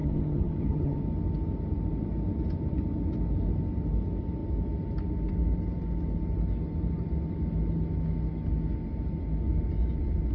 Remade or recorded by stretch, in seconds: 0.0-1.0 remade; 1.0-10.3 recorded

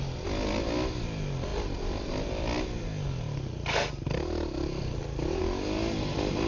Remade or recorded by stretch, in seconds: 0.0-6.5 recorded

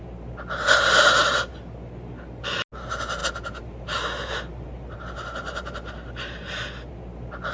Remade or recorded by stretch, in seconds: 0.0-7.5 recorded